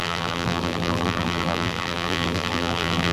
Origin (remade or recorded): remade